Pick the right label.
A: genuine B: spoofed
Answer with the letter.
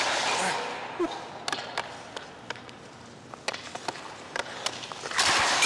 A